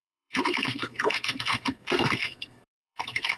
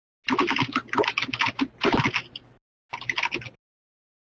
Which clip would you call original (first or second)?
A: second